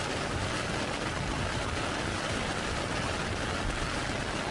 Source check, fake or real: real